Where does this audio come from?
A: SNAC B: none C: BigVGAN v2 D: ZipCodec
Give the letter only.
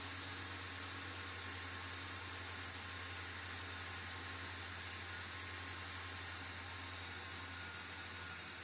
B